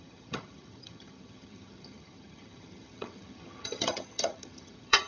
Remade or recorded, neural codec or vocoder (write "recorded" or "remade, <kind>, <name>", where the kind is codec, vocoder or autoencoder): remade, vocoder, HiFi-GAN